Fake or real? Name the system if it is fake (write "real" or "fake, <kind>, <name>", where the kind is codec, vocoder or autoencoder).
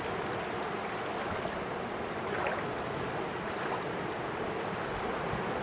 real